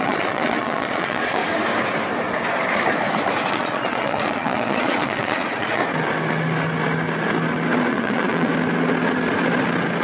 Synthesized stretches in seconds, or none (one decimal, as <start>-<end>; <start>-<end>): 0.0-1.4; 3.5-5.8; 7.9-8.5